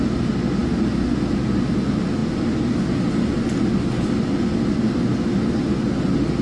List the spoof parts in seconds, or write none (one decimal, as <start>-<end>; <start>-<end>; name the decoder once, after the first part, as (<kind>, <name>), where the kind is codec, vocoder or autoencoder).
none